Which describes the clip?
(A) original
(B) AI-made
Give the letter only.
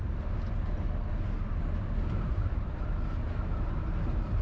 A